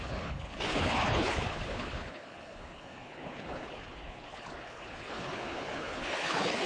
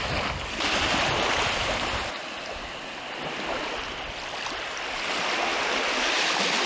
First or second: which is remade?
first